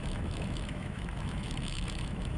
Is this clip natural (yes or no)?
no